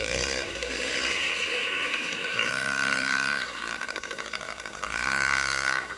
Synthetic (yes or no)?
yes